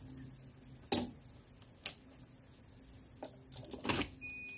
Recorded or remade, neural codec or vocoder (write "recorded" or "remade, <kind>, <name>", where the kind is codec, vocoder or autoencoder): recorded